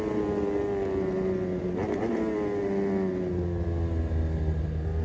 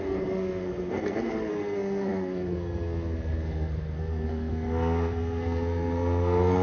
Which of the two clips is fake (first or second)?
second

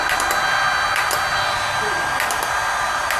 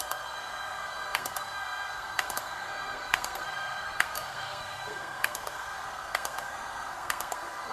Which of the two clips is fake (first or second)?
second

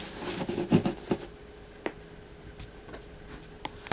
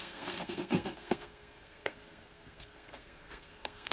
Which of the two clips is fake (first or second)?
second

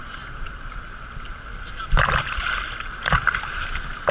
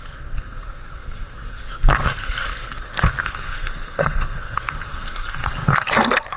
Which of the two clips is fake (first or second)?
second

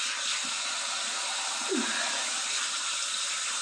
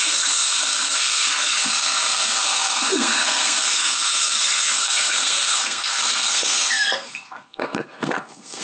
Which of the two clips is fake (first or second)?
second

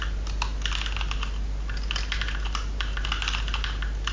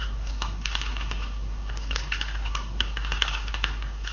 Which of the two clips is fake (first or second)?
second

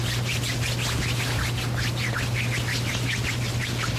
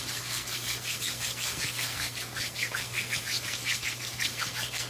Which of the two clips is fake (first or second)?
second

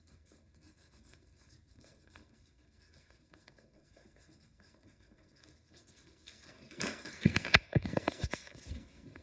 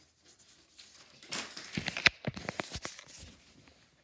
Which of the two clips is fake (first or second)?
first